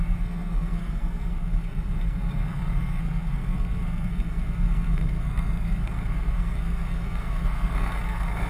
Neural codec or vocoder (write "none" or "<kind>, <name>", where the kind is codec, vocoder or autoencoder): codec, SNAC